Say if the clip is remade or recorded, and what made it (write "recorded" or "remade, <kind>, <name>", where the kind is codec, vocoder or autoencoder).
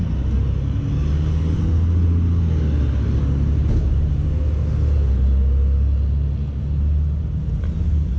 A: recorded